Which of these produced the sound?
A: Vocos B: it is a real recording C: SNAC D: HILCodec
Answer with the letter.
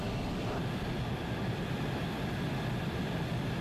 B